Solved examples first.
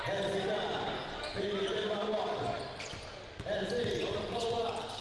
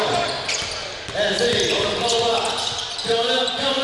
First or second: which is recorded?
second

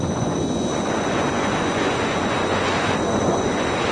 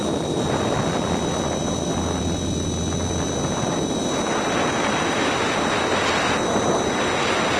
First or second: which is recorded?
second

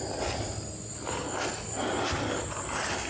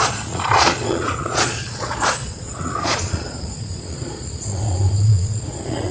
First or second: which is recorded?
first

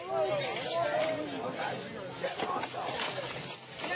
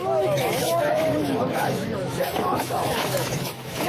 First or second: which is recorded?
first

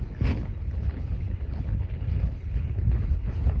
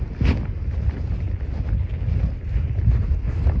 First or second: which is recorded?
second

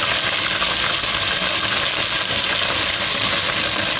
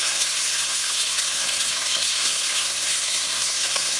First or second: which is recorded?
first